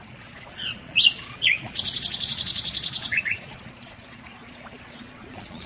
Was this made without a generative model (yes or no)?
no